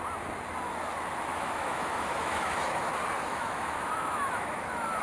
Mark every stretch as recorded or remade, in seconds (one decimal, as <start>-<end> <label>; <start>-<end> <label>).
0.0-1.3 recorded; 1.3-2.8 remade; 2.8-3.3 recorded; 3.3-5.0 remade